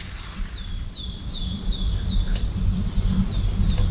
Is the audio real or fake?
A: real